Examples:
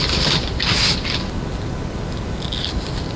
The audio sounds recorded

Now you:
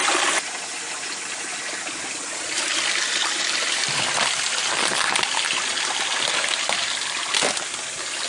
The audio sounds recorded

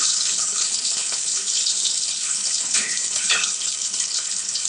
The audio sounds remade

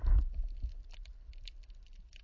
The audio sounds recorded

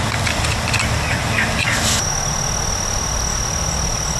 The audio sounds recorded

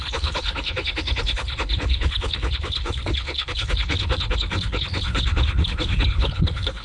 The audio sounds remade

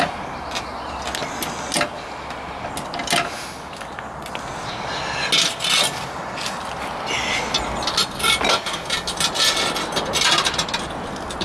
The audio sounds recorded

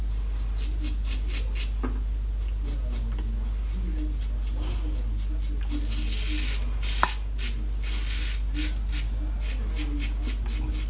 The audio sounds recorded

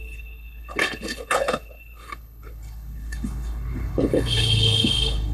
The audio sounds remade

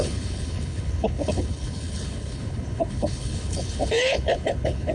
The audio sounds remade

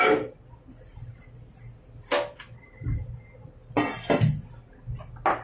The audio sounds recorded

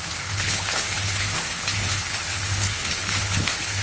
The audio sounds remade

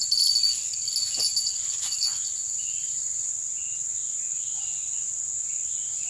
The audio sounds recorded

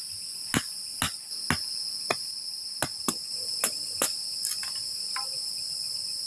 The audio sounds recorded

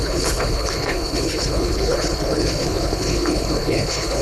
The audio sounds remade